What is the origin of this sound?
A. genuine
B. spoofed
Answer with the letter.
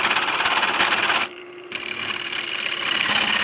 A